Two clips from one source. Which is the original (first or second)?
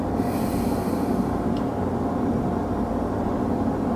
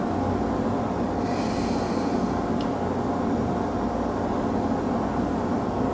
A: second